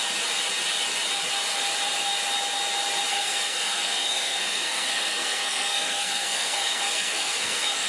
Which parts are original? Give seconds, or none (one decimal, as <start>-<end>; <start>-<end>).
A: 0.0-3.1